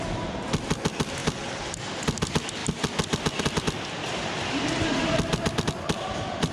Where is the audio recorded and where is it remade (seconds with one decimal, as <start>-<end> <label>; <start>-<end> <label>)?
0.0-1.2 recorded; 1.2-1.8 remade; 1.8-6.5 recorded